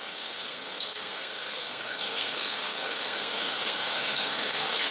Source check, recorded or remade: remade